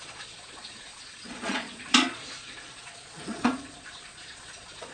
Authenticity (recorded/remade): remade